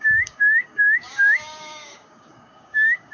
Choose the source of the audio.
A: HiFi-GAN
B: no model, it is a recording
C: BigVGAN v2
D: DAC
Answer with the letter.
D